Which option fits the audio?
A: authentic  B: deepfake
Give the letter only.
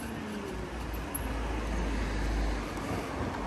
A